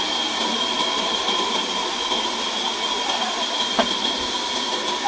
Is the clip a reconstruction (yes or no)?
no